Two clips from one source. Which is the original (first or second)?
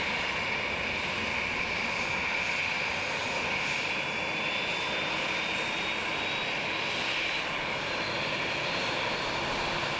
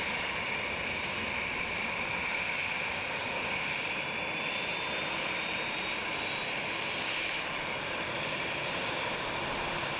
first